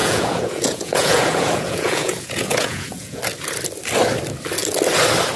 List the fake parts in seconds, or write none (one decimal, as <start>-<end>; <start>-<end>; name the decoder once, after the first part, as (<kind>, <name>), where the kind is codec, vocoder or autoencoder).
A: 0.0-3.2 (vocoder, Vocos)